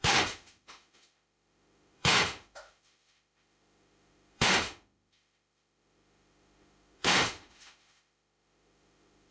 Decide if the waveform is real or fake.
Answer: fake